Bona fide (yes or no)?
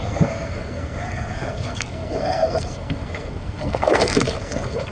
no